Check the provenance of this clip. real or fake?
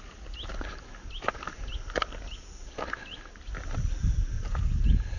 real